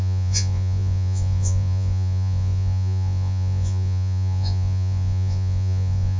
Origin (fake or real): fake